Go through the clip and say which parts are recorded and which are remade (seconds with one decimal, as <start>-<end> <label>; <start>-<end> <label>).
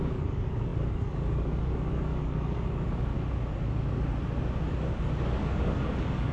0.0-3.1 remade; 3.1-5.0 recorded; 5.0-6.3 remade